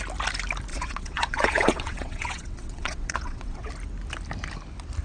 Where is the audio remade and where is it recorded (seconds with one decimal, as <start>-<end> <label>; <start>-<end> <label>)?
0.0-0.7 recorded; 0.7-3.7 remade; 3.7-5.0 recorded